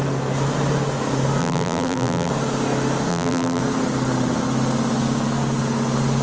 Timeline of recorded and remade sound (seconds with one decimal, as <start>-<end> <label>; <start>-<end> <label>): 0.0-1.4 recorded; 1.4-2.3 remade; 2.3-3.1 recorded; 3.1-3.6 remade; 3.6-6.2 recorded